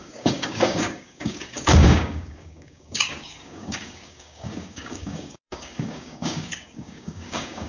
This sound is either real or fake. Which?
fake